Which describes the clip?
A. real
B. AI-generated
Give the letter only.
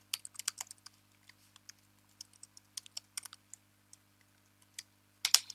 A